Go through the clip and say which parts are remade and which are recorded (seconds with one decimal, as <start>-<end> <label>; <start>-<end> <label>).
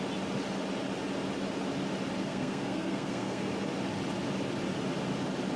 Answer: 0.0-2.2 recorded; 2.2-3.5 remade; 3.5-5.6 recorded